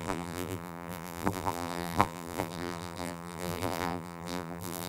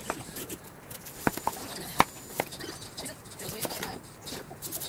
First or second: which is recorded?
second